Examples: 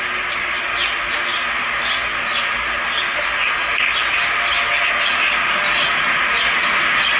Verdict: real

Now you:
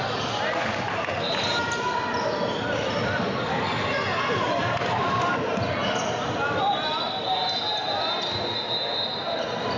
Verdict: real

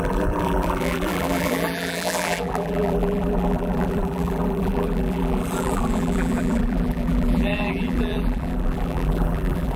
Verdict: fake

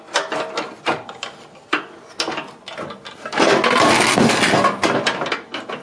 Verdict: real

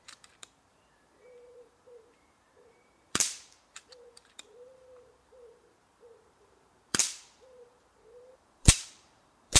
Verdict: fake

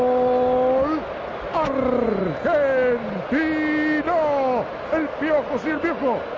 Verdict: real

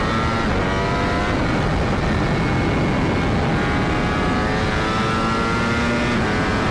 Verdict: real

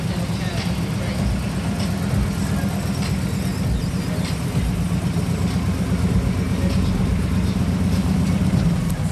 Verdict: real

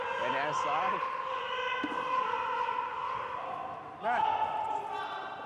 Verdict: real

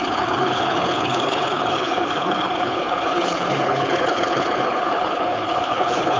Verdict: fake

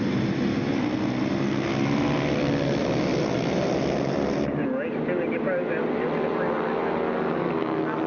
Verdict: real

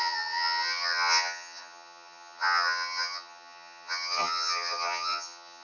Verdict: fake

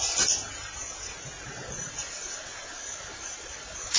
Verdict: real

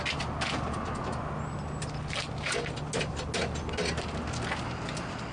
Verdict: real